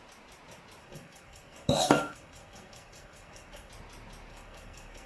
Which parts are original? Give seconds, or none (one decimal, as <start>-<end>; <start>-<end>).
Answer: 0.0-0.8; 3.7-4.3

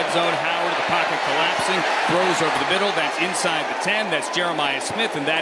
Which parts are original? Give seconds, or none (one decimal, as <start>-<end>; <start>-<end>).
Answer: 0.0-5.4

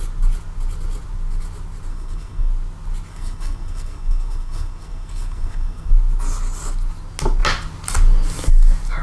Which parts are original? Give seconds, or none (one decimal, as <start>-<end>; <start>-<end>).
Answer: 0.0-1.9; 2.5-3.1; 5.9-9.0

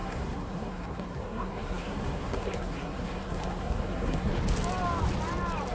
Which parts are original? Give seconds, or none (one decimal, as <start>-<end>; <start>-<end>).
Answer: 4.3-5.7

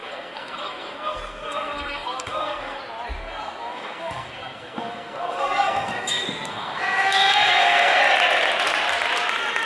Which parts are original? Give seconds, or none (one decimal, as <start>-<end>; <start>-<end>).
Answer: 2.8-3.2; 8.0-9.7